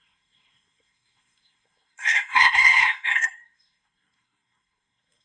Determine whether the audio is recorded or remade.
remade